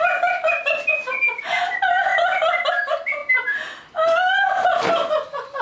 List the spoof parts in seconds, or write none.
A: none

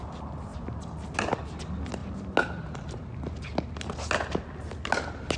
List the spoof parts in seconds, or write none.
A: none

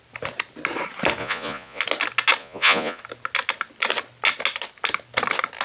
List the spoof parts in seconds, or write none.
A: 1.2-1.8; 2.4-3.0

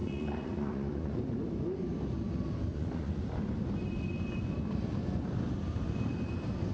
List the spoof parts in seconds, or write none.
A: 0.0-1.2; 2.7-3.2

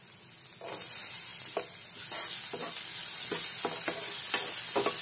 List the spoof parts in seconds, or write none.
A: none

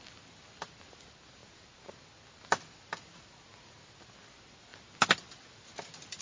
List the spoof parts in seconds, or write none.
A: none

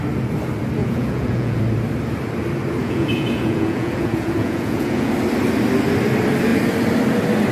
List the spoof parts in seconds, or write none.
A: 0.8-1.6; 2.8-5.1